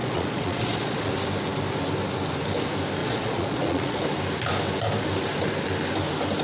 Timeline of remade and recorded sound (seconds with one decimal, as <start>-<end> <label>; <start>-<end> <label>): 0.0-1.1 remade; 1.1-3.0 recorded; 3.0-4.0 remade; 4.0-6.4 recorded